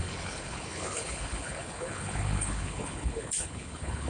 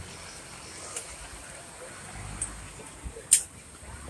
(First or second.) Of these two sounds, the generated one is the first